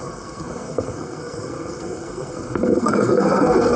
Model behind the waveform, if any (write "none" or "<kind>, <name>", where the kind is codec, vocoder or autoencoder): codec, SNAC